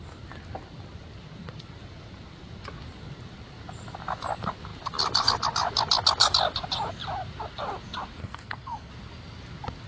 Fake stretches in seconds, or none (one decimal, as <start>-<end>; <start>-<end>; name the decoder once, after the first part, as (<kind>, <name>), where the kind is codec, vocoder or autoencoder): 8.2-8.9 (codec, SNAC)